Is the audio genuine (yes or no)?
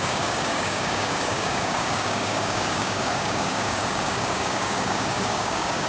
no